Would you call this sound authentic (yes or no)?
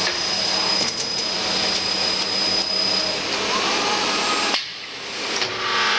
yes